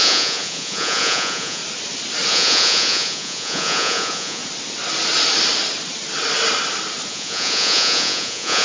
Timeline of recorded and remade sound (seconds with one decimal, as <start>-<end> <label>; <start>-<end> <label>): 0.0-1.6 remade; 1.6-2.3 recorded; 2.3-4.4 remade; 4.4-7.1 recorded; 7.1-8.6 remade